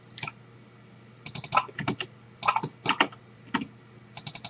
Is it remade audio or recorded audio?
recorded